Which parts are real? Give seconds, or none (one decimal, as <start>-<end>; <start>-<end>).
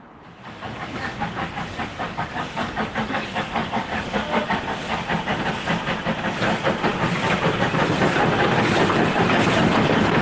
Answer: 0.0-0.4; 1.2-1.9; 4.4-10.2